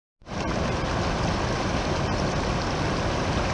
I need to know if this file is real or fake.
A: real